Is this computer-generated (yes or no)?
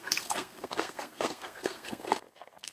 yes